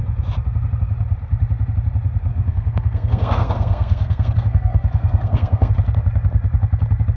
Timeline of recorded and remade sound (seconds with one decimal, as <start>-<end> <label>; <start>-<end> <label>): 0.0-2.3 recorded; 2.3-5.7 remade; 5.7-7.2 recorded